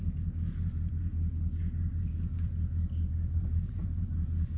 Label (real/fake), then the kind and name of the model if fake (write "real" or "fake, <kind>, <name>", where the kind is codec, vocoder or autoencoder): real